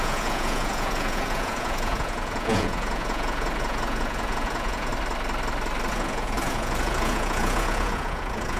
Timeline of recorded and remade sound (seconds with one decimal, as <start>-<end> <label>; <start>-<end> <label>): 0.0-4.9 remade; 4.9-5.9 recorded; 5.9-8.6 remade